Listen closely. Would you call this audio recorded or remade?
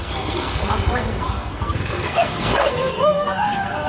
remade